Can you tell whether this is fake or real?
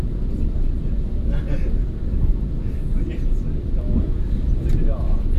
real